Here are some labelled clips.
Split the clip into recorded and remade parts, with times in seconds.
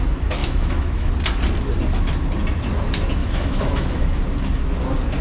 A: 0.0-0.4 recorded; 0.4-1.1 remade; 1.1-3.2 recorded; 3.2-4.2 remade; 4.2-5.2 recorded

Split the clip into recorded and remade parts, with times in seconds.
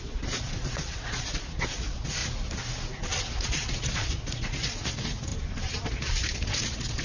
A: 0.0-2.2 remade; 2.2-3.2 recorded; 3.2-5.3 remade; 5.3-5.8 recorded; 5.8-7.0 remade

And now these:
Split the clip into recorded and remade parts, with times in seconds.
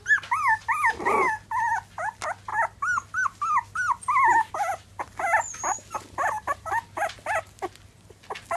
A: 0.0-8.6 recorded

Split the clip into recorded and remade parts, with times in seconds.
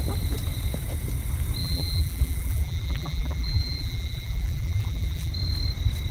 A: 0.0-1.6 recorded; 1.6-5.3 remade; 5.3-6.1 recorded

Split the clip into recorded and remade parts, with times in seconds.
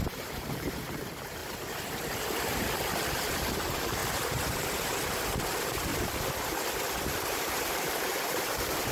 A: 0.0-1.4 remade; 1.4-3.1 recorded; 3.1-5.9 remade; 5.9-7.3 recorded; 7.3-8.9 remade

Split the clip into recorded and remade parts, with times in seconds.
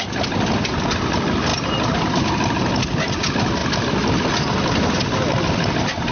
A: 0.0-6.1 recorded